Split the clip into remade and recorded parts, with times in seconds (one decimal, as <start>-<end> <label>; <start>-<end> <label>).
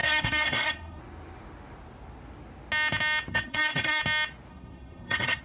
0.0-1.0 remade; 1.0-3.3 recorded; 3.3-4.0 remade; 4.0-4.5 recorded; 4.5-5.4 remade